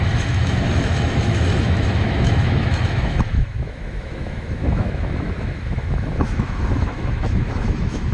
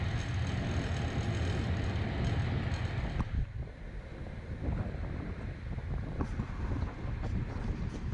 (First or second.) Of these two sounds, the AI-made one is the first